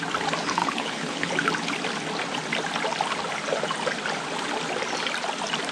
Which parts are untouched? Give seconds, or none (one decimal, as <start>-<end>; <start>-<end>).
0.0-0.6; 1.3-5.7